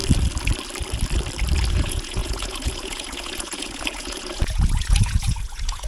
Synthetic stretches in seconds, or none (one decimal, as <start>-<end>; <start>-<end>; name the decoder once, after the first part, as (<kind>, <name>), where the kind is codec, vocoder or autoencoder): 1.7-5.9 (vocoder, Vocos)